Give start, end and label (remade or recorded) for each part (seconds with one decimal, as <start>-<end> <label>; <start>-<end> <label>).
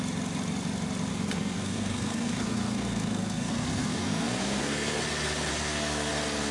0.0-1.1 recorded; 1.1-5.0 remade; 5.0-5.5 recorded; 5.5-6.1 remade; 6.1-6.5 recorded